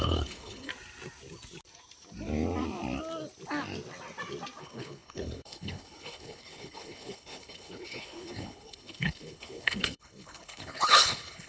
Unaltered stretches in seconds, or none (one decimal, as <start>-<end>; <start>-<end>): 0.7-4.6